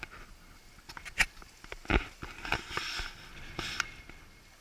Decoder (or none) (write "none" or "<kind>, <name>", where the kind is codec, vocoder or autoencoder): none